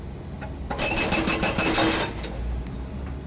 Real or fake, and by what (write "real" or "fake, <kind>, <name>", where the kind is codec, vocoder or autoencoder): real